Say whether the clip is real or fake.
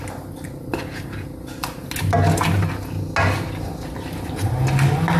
real